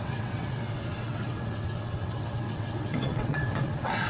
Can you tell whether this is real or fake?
fake